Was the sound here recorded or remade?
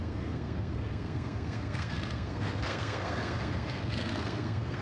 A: remade